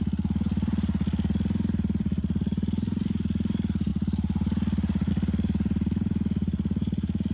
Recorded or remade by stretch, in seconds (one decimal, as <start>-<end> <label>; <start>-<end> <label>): 0.0-7.3 remade